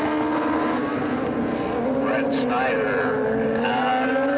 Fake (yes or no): no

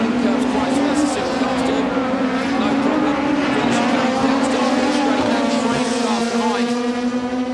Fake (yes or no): no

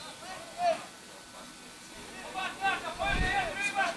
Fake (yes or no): no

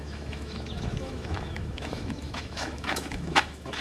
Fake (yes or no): yes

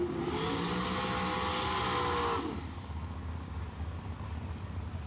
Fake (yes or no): no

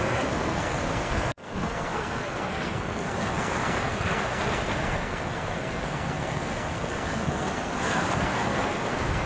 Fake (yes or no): yes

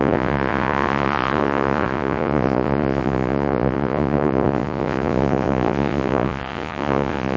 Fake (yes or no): yes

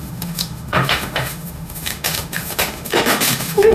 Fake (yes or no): yes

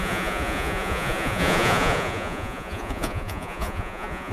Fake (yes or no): yes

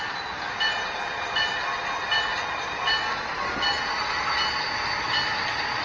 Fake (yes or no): no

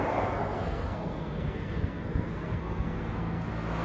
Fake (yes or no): yes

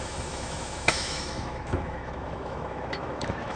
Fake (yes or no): yes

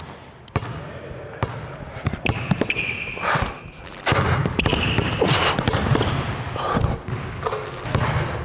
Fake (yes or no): no